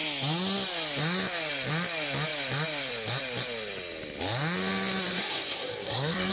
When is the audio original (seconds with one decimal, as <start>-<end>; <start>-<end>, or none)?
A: 0.0-5.1